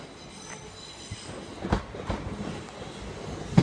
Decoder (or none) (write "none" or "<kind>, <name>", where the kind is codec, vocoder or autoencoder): none